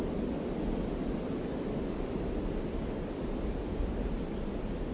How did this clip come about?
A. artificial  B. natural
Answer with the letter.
B